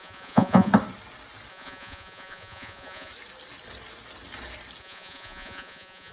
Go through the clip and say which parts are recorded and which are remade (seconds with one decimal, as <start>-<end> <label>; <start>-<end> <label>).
0.0-0.7 remade; 0.7-1.5 recorded; 1.5-3.1 remade; 3.1-4.8 recorded; 4.8-6.1 remade